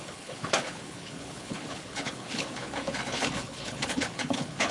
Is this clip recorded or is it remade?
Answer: remade